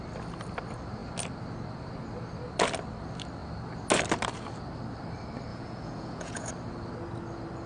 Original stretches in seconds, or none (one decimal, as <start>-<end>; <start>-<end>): 0.0-5.5; 6.5-7.7